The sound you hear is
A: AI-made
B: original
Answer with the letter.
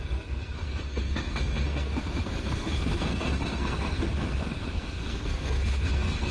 A